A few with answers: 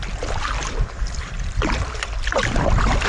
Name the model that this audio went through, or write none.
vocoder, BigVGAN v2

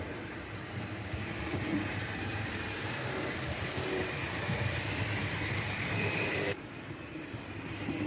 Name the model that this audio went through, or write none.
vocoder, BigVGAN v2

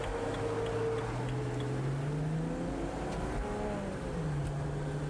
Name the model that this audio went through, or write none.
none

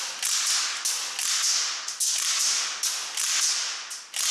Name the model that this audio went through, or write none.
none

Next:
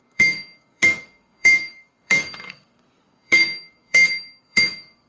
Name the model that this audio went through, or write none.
codec, SNAC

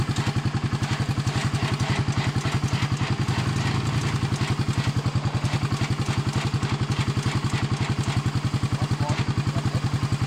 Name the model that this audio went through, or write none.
none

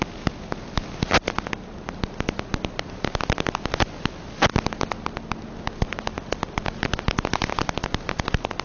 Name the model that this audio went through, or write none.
none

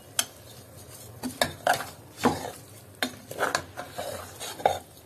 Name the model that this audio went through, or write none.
none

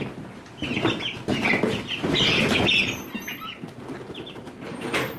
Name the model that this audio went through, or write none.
none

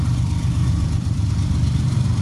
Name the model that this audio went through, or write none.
vocoder, BigVGAN v2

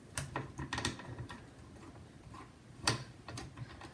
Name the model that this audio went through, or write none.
none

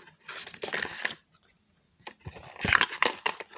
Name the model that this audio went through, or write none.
none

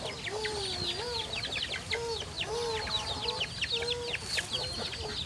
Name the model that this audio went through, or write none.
none